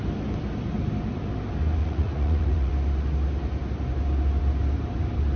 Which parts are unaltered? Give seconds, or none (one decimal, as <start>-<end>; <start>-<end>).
0.0-1.8; 2.7-5.4